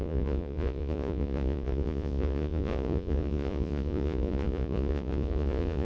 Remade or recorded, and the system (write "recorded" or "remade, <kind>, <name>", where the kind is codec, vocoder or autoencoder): remade, vocoder, Vocos